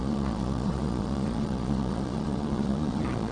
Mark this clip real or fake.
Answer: fake